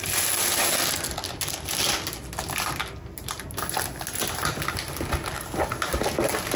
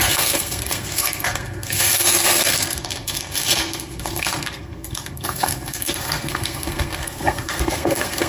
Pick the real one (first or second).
first